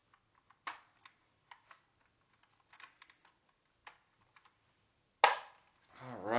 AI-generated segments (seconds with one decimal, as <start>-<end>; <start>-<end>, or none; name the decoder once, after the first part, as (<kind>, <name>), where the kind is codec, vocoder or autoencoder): none